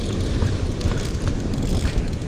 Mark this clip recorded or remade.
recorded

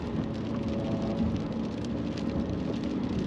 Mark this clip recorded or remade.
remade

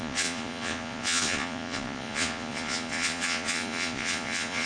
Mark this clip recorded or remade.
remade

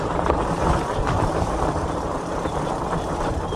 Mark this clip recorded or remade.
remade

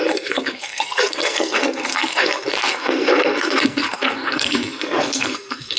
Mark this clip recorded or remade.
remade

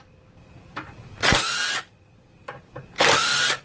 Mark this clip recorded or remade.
recorded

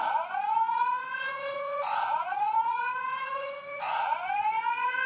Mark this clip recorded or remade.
remade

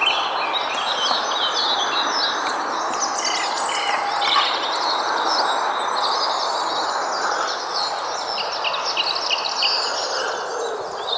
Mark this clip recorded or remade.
recorded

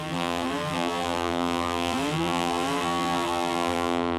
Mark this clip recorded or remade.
remade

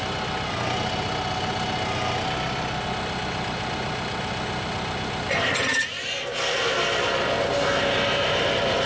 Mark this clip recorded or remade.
recorded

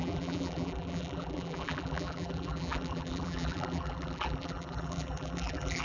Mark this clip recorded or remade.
remade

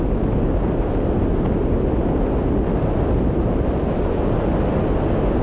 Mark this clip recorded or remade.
recorded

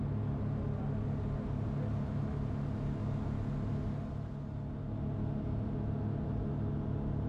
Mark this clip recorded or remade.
recorded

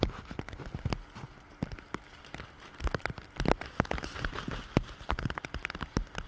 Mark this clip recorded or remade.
recorded